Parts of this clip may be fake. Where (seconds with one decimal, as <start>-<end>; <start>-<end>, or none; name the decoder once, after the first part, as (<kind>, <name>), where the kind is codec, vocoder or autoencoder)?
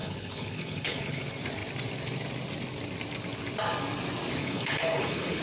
0.0-1.2 (codec, HILCodec); 4.4-5.4